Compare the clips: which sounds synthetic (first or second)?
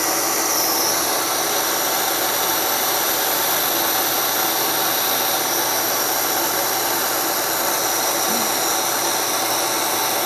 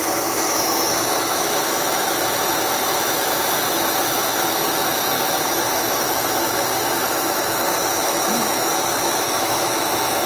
second